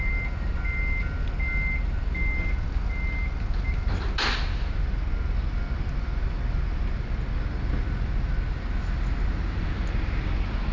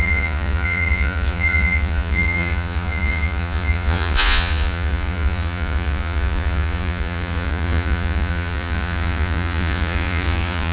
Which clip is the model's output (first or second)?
second